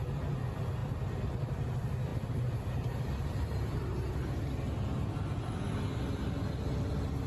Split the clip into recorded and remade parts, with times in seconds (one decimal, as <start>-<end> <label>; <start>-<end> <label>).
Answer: 0.0-2.1 recorded; 2.1-4.1 remade; 4.1-7.3 recorded